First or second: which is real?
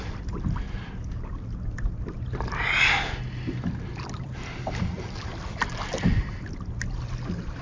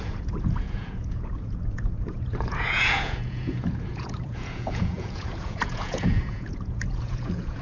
first